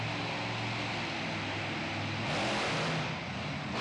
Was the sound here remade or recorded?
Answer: recorded